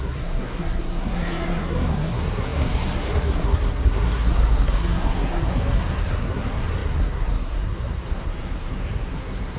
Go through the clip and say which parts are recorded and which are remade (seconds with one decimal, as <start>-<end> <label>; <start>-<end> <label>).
0.0-9.6 remade